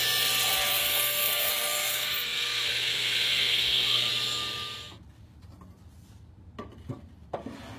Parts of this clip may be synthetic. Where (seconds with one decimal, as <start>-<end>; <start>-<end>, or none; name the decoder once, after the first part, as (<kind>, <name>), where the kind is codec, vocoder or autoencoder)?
0.8-1.5 (codec, SNAC); 1.9-4.1